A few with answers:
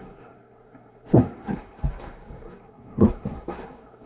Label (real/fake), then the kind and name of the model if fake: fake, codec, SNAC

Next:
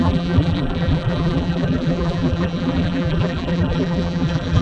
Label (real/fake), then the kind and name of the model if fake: fake, vocoder, BigVGAN v2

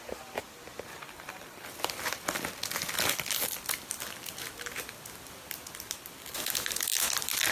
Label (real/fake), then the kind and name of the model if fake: real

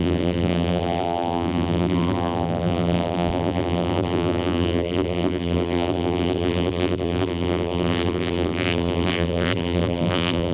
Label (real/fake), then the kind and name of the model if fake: fake, vocoder, BigVGAN v2